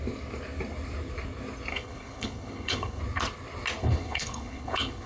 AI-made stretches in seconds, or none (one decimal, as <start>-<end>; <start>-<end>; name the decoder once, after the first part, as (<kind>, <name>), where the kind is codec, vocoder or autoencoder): 1.7-3.0 (codec, HILCodec); 3.8-5.1